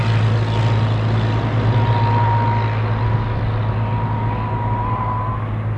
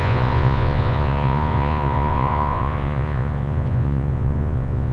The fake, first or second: second